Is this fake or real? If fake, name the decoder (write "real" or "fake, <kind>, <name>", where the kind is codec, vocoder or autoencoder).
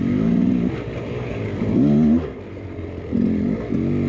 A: real